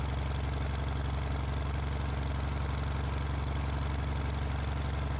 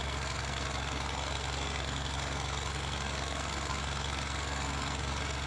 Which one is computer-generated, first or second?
second